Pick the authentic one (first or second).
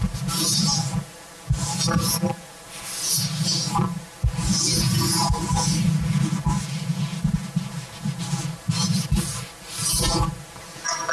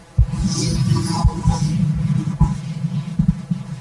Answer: first